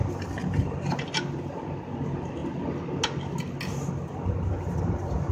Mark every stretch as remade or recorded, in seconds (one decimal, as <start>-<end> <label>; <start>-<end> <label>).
0.0-5.3 recorded